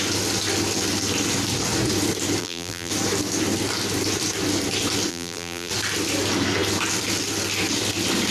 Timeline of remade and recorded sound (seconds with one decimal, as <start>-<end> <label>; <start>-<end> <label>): 0.0-2.4 recorded; 2.4-2.9 remade; 2.9-5.1 recorded; 5.1-5.7 remade; 5.7-8.3 recorded